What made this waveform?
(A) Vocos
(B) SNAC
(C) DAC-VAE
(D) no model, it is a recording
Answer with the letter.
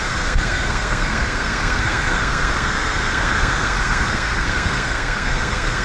B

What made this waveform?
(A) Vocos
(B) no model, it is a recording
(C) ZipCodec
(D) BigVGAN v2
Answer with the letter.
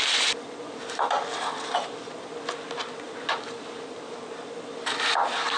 D